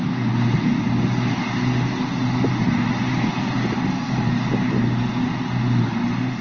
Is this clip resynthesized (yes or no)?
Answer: no